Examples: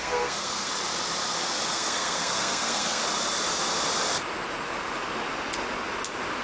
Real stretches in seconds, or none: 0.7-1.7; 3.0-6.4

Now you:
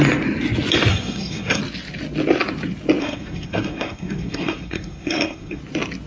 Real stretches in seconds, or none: 0.0-0.9; 1.6-3.0; 5.6-6.1

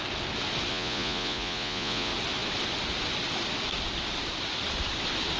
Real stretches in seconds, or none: 0.0-0.7; 2.1-5.4

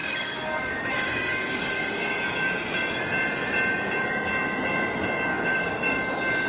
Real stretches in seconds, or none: 2.1-5.3

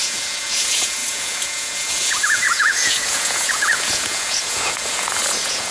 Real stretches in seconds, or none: none

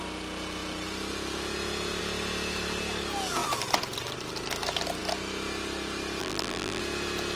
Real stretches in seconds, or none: 0.0-6.2; 6.8-7.4